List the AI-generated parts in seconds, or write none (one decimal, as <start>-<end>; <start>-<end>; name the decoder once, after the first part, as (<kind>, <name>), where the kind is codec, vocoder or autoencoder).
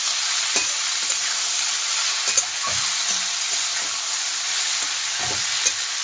none